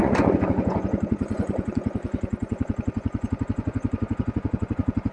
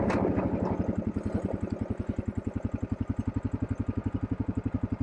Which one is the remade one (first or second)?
first